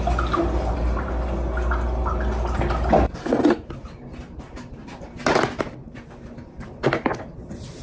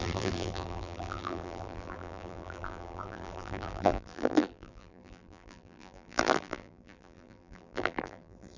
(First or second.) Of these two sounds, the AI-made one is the second